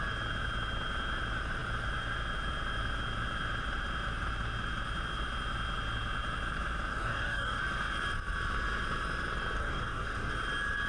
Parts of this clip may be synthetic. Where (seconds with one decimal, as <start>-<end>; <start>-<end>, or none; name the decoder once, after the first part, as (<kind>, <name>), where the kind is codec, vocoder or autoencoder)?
6.9-7.6 (codec, DAC); 9.6-10.3